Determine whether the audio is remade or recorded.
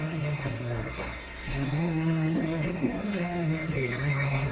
remade